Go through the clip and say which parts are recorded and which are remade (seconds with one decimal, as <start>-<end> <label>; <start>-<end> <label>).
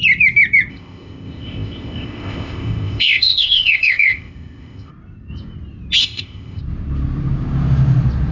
0.0-0.7 recorded; 0.7-4.9 remade; 4.9-6.0 recorded; 6.0-6.6 remade; 6.6-8.3 recorded